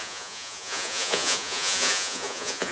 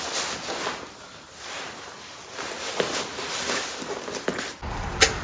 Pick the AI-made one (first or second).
first